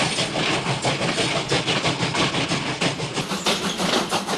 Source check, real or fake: real